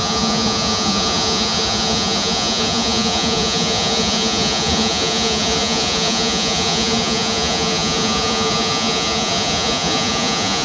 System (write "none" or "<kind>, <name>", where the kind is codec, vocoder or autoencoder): vocoder, Vocos